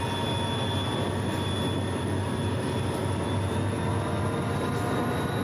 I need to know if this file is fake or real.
real